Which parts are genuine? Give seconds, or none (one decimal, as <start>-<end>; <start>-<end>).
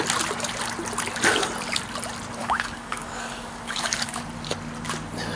0.0-2.4; 4.2-5.4